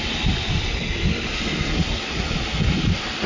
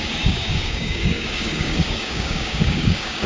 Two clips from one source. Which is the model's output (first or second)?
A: second